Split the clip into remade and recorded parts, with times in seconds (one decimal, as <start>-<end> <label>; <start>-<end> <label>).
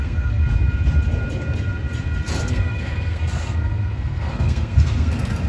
0.0-0.4 remade; 0.4-2.4 recorded; 2.4-5.5 remade